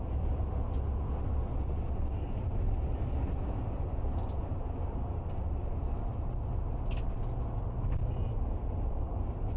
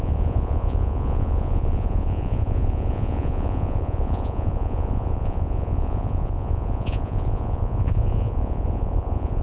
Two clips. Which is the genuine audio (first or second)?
first